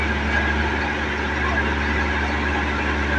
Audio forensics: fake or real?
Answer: real